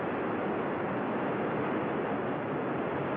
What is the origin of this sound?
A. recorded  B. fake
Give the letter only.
A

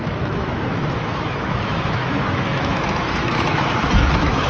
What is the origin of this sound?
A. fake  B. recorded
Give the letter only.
A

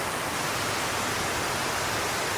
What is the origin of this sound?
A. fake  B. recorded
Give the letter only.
B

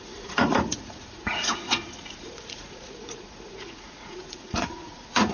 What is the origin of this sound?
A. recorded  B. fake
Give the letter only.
B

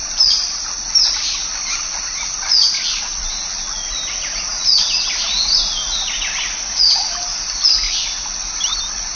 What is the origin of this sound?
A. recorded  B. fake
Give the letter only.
A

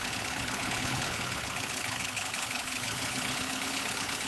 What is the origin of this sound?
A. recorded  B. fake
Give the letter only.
B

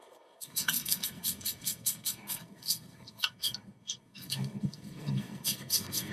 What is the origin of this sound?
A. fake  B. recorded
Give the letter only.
A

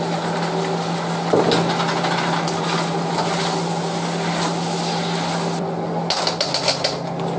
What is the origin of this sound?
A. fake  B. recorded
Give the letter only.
B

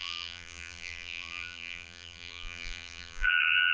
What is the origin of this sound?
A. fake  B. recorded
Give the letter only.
A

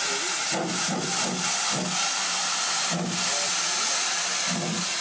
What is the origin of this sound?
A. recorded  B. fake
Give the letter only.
A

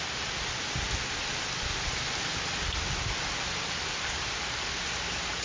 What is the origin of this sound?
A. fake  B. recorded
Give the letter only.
B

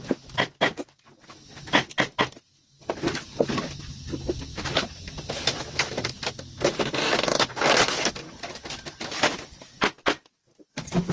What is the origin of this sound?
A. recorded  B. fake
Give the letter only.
A